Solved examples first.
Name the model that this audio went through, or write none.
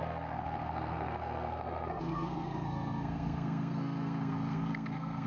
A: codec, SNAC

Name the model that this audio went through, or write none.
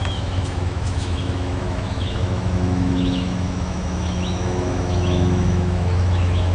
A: autoencoder, DAC-VAE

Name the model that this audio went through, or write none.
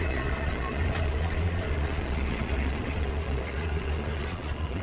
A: vocoder, Vocos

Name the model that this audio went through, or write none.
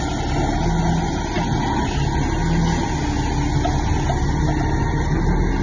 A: none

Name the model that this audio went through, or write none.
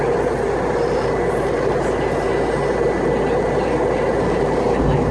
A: none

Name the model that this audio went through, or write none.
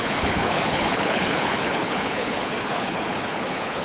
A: codec, HILCodec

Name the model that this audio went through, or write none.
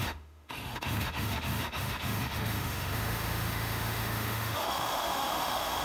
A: autoencoder, DAC-VAE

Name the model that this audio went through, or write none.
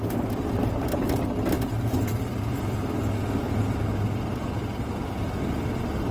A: none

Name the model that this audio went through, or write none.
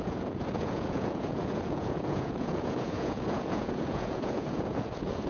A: vocoder, Vocos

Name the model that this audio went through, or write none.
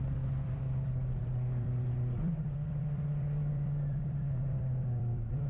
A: vocoder, BigVGAN v2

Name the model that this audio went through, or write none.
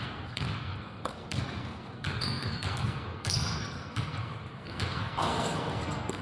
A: codec, SNAC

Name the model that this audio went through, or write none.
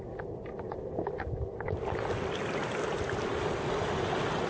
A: none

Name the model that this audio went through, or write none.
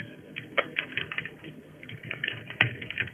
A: codec, SNAC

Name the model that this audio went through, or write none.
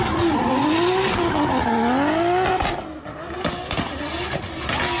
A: none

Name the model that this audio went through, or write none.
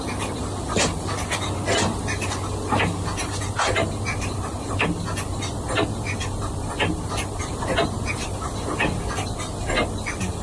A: none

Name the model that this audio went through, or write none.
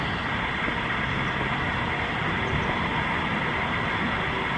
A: none